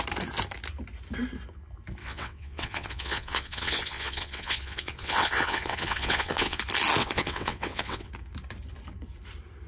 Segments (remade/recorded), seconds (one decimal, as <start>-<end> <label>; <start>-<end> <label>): 0.0-2.0 recorded; 2.0-6.6 remade; 6.6-7.0 recorded; 7.0-8.1 remade; 8.1-9.7 recorded